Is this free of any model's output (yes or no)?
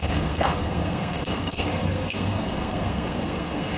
no